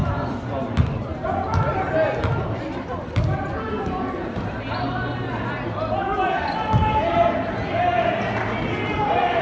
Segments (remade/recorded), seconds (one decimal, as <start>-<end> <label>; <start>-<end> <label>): 0.0-9.4 recorded